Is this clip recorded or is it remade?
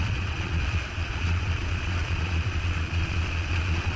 remade